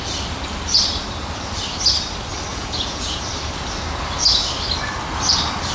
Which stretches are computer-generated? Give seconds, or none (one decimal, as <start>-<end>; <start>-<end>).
2.5-3.2